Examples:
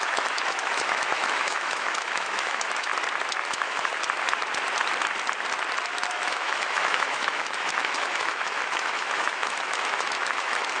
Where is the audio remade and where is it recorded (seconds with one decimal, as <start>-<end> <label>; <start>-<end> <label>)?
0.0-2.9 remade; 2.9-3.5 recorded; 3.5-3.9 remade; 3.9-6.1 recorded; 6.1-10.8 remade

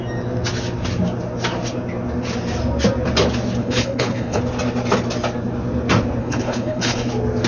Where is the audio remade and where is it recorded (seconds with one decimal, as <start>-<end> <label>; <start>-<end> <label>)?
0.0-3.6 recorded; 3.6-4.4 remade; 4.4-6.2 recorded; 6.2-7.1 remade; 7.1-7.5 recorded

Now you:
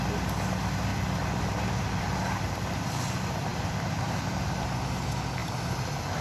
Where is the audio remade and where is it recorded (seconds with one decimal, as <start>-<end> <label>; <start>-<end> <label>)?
0.0-0.9 recorded; 0.9-3.0 remade; 3.0-3.5 recorded; 3.5-4.8 remade; 4.8-5.4 recorded; 5.4-6.2 remade

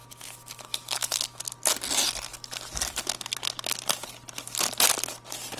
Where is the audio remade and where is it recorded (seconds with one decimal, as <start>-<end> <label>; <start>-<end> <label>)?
0.0-1.4 remade; 1.4-5.6 recorded

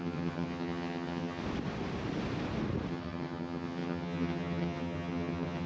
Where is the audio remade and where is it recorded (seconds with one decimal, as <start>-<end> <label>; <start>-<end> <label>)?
0.0-1.4 remade; 1.4-2.9 recorded; 2.9-5.7 remade

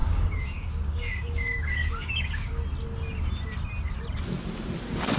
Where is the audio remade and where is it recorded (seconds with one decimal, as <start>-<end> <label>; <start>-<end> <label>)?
0.0-2.6 remade; 2.6-5.2 recorded

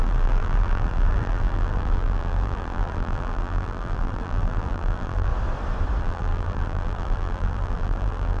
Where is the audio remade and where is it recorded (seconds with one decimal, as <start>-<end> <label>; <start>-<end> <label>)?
0.0-5.3 remade; 5.3-6.0 recorded; 6.0-8.4 remade